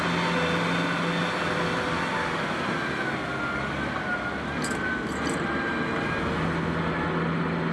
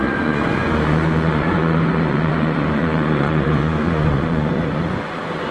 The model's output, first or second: second